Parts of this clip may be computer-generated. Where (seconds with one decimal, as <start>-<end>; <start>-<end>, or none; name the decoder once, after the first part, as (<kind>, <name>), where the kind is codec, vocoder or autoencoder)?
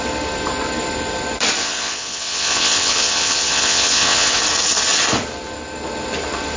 1.6-4.4 (vocoder, WaveNeXt)